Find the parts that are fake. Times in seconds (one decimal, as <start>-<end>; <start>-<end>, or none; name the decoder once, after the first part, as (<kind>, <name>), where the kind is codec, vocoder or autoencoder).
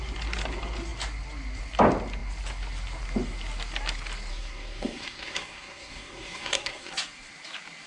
4.3-6.9 (codec, SNAC)